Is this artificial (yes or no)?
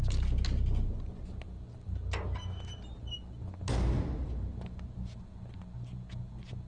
no